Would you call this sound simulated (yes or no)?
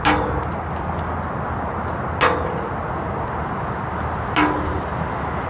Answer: no